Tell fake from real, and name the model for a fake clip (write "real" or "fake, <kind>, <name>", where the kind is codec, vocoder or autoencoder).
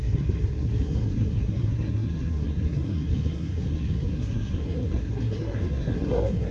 fake, codec, SNAC